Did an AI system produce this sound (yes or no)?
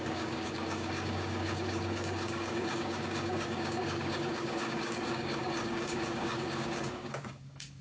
yes